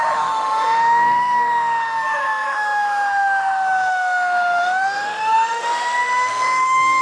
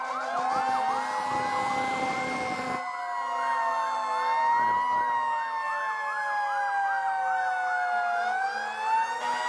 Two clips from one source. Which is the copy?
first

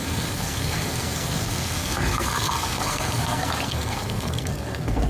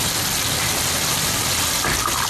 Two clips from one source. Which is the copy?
first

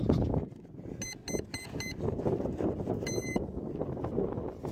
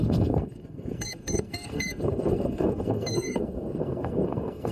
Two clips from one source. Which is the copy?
second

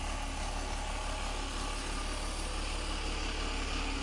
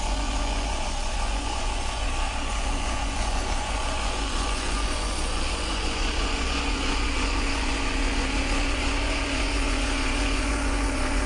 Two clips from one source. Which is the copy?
second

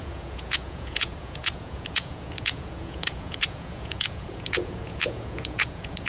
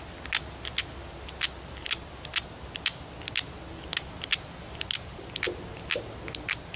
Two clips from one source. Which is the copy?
first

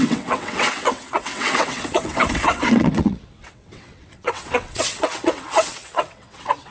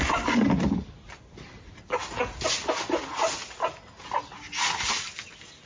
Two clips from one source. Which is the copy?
first